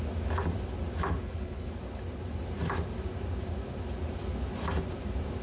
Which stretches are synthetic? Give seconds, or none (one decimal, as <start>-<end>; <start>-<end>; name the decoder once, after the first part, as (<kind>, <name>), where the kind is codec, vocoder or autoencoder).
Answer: 1.2-1.7 (codec, HILCodec)